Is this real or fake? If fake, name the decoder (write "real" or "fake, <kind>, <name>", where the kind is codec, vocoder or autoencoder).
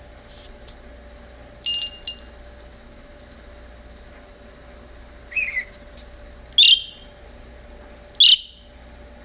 real